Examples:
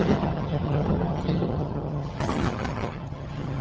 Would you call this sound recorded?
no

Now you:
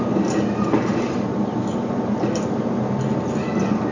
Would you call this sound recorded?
yes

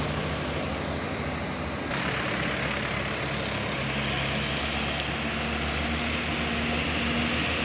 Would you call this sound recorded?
yes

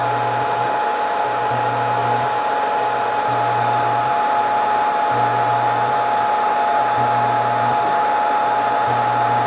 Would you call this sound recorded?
yes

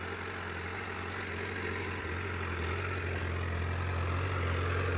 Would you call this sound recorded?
yes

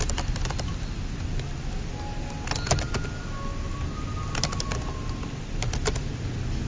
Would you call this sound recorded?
yes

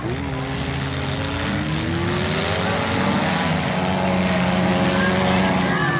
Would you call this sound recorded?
yes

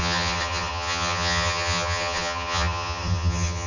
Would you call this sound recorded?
no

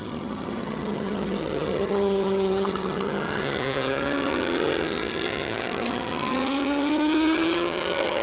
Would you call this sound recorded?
no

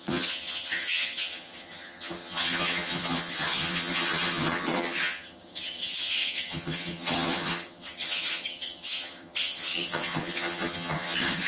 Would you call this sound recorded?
no